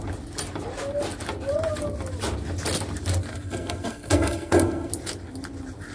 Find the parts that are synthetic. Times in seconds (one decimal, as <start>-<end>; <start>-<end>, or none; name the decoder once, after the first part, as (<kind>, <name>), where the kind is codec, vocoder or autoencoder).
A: 3.3-4.9 (codec, SNAC)